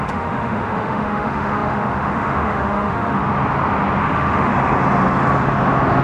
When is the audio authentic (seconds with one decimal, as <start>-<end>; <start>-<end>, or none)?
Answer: 3.2-4.0; 4.5-6.0